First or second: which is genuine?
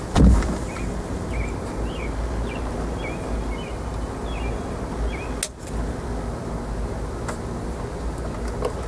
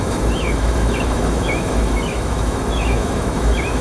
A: first